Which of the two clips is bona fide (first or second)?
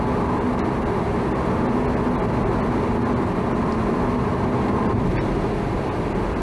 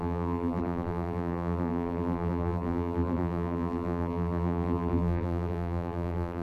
first